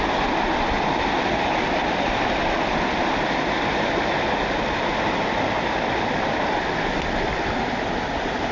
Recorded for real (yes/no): yes